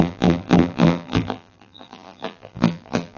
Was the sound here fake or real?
fake